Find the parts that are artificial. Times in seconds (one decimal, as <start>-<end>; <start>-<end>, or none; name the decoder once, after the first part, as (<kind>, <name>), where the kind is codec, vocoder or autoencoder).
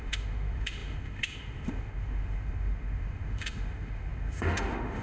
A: 0.0-5.0 (autoencoder, DAC-VAE)